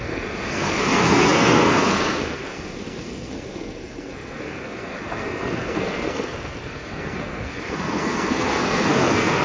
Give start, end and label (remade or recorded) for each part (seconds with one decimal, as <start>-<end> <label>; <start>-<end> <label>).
0.0-9.4 remade